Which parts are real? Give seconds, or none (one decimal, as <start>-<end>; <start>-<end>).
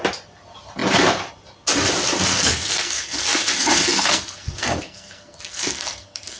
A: 0.0-2.3